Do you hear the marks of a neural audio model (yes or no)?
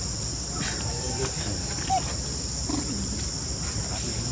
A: no